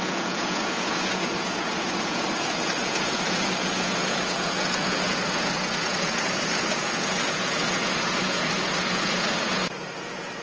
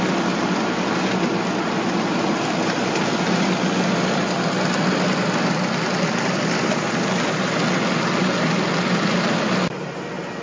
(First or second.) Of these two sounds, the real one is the second